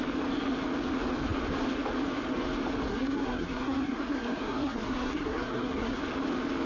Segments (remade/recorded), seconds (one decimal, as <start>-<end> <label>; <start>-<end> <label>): 0.0-2.9 recorded; 2.9-6.0 remade; 6.0-6.7 recorded